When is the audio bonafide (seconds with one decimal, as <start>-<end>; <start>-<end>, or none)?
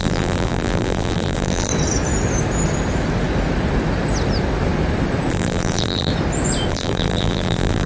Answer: 1.7-5.3; 6.1-6.7